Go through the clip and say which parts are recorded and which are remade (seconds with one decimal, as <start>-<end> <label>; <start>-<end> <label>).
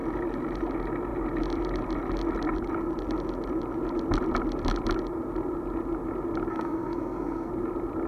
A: 0.0-6.5 recorded; 6.5-7.5 remade; 7.5-8.1 recorded